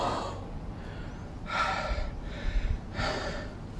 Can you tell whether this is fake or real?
real